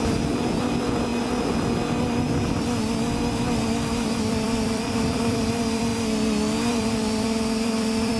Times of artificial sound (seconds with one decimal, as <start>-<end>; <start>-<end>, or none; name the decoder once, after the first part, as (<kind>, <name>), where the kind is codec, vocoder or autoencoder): 0.0-1.1 (vocoder, BigVGAN v2); 4.2-5.9; 6.7-8.2